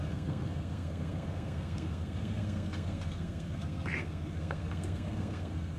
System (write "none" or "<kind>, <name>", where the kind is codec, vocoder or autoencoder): codec, SNAC